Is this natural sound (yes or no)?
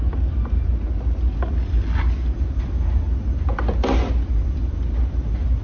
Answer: yes